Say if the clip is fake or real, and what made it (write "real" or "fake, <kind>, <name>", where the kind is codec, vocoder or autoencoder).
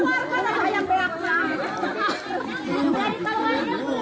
real